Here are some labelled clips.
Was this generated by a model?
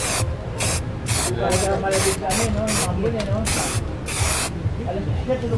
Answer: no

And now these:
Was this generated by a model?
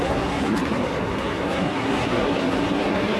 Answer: yes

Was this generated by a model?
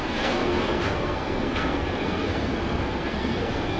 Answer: yes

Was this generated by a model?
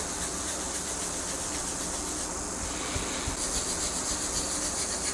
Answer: no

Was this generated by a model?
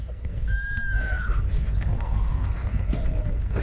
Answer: yes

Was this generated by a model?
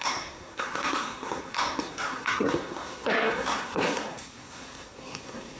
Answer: yes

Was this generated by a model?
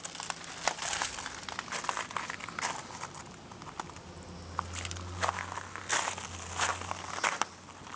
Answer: no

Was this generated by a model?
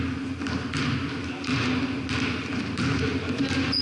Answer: no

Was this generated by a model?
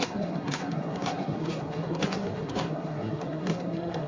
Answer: yes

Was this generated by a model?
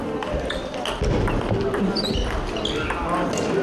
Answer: no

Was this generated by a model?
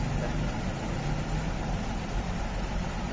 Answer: no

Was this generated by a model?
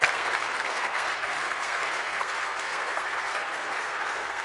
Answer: yes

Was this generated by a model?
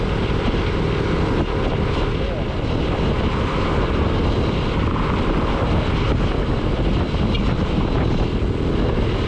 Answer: no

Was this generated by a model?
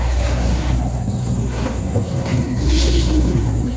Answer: yes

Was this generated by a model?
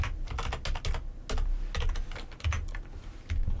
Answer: no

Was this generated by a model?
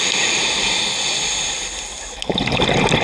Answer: no